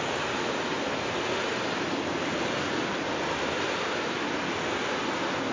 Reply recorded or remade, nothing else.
recorded